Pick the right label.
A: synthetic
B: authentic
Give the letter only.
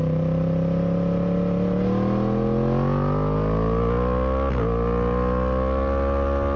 B